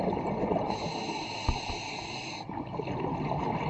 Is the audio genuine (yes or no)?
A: yes